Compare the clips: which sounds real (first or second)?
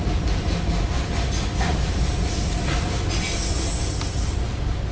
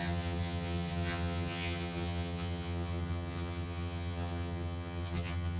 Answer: first